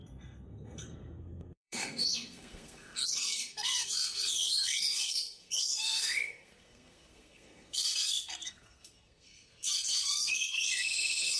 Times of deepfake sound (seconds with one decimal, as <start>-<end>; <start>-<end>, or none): 0.0-11.4